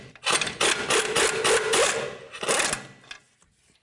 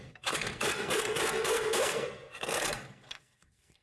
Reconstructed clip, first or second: second